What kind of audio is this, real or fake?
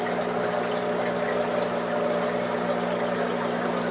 real